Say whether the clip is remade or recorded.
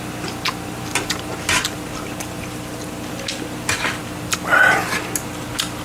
recorded